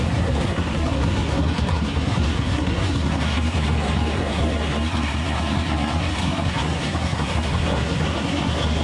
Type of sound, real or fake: fake